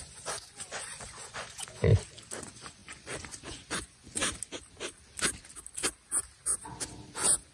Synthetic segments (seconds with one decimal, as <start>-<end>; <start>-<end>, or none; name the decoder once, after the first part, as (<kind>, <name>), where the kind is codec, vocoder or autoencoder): 0.0-1.9 (vocoder, Vocos); 2.4-4.2; 7.1-7.5